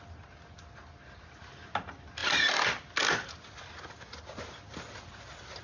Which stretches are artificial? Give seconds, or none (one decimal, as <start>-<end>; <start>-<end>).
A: none